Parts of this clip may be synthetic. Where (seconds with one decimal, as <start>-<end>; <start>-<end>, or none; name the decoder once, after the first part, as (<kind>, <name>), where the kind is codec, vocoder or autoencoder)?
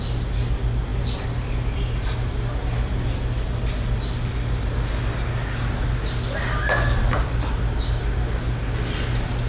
none